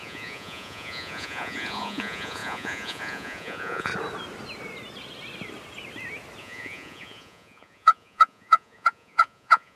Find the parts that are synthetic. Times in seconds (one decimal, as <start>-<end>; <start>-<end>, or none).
0.0-3.9; 6.4-9.8